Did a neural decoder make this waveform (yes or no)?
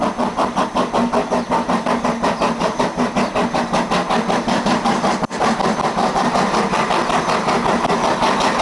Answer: no